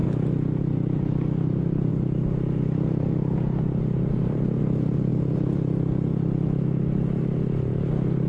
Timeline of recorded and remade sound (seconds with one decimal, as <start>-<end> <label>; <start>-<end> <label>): 0.0-0.6 recorded; 0.6-1.9 remade; 1.9-4.1 recorded; 4.1-5.1 remade; 5.1-8.3 recorded